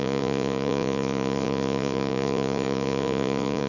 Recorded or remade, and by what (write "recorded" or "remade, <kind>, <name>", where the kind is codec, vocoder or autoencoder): remade, vocoder, Vocos